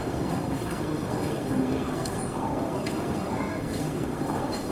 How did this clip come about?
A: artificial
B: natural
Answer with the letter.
A